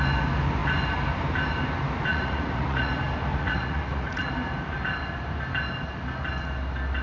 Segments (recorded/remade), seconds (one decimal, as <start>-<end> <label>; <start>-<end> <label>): 0.0-2.1 recorded; 2.1-2.9 remade; 2.9-3.3 recorded; 3.3-4.3 remade; 4.3-7.0 recorded

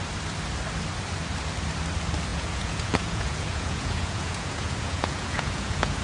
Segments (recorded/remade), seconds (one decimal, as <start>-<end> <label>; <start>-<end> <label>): 0.0-2.3 recorded; 2.3-6.0 remade

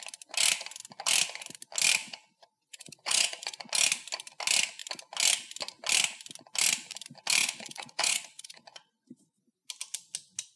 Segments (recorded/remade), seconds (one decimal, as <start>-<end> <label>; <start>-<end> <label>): 0.0-2.0 recorded; 2.0-3.7 remade; 3.7-7.4 recorded; 7.4-9.4 remade; 9.4-10.6 recorded

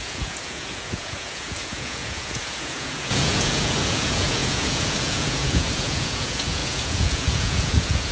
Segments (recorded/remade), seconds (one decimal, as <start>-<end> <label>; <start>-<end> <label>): 0.0-8.1 remade